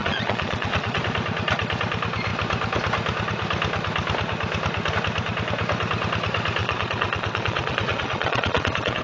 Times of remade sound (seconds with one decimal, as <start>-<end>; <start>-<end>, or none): 0.0-1.0; 6.6-9.0